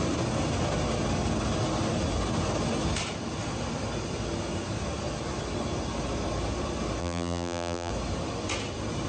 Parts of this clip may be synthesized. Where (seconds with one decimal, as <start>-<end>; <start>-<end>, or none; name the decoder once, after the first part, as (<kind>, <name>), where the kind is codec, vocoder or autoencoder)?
7.0-7.9 (vocoder, BigVGAN v2)